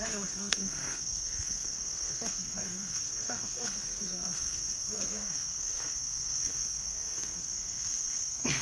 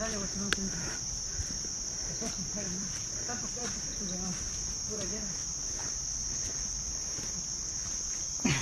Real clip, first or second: second